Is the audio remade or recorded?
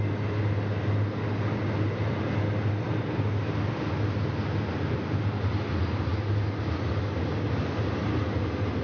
recorded